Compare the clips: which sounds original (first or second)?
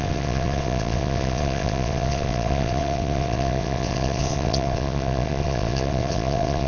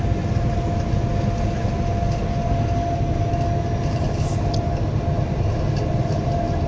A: second